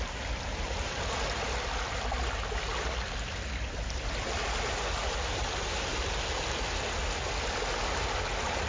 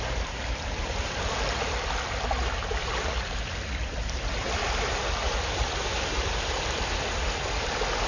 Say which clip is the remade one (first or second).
second